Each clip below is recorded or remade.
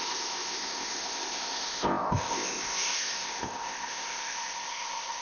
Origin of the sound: remade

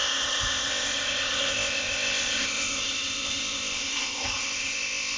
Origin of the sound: remade